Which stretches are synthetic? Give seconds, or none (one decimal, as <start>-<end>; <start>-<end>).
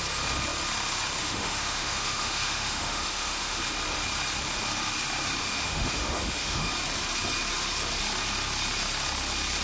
1.2-3.6; 5.4-6.7